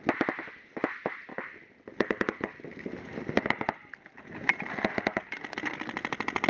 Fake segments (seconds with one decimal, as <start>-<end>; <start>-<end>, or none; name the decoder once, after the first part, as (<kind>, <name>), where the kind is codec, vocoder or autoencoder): none